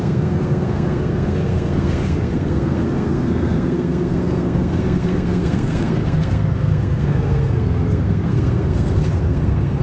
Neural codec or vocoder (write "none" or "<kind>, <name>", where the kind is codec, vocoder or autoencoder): codec, SNAC